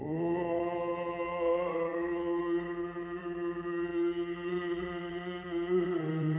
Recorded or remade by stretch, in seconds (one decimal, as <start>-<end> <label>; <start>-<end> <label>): 0.0-6.4 remade